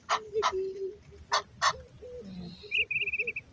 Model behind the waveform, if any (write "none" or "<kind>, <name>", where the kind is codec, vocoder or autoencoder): none